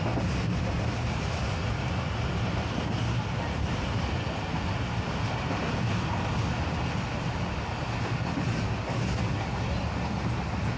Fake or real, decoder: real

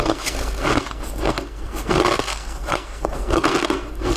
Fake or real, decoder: fake, codec, SNAC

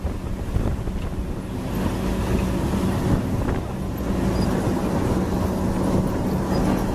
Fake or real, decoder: real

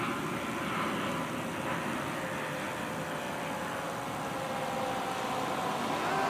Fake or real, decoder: real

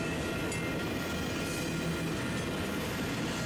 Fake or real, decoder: real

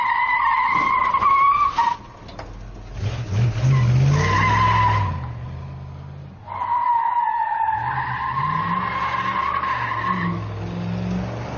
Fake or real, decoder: real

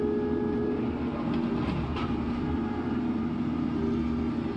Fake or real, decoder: real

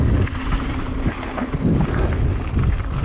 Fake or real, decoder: real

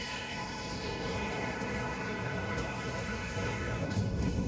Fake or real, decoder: fake, codec, SNAC